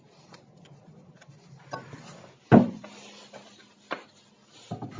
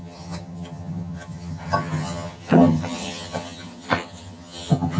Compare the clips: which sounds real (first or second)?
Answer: first